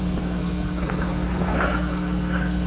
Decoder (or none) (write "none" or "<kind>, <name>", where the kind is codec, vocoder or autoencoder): codec, SNAC